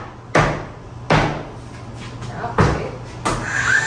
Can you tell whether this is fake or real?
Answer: real